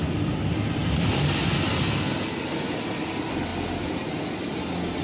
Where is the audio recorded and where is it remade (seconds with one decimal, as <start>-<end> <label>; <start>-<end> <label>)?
0.0-5.0 recorded